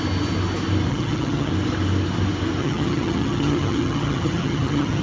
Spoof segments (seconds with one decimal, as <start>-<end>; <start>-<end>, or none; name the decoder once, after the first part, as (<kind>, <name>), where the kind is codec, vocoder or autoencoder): 0.9-1.5 (vocoder, HiFi-GAN); 2.6-5.0